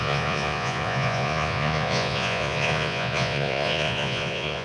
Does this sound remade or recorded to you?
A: remade